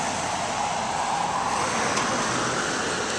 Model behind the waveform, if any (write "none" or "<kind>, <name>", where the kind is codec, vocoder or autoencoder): none